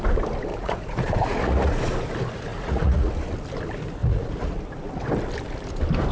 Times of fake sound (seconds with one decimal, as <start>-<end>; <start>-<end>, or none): 0.5-1.8; 2.5-3.1; 4.0-4.6